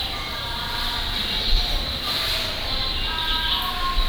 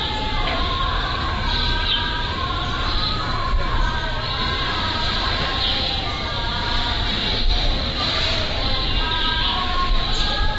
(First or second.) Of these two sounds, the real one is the first